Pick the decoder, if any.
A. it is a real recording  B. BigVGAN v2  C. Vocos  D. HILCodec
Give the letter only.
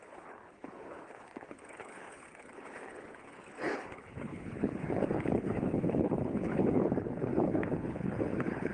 D